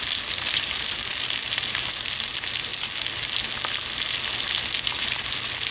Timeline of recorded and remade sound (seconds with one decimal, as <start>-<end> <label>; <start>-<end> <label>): 0.0-5.7 recorded